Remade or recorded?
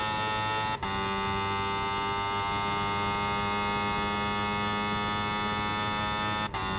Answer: recorded